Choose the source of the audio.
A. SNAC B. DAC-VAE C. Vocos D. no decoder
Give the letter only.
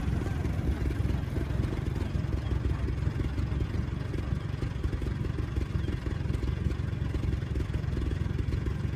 D